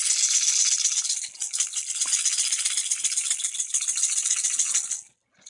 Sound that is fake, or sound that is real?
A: real